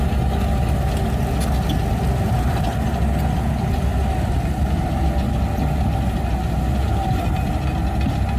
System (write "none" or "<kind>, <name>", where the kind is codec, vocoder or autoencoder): none